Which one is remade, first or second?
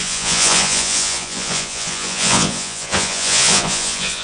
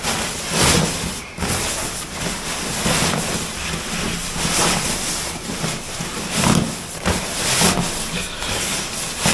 first